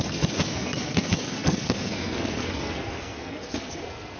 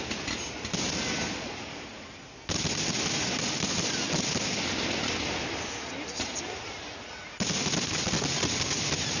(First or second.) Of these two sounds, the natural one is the second